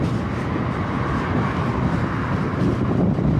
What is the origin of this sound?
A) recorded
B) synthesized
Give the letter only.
A